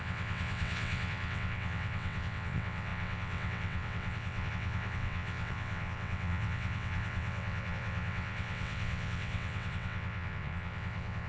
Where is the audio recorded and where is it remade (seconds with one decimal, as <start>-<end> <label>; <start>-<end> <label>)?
0.0-11.3 remade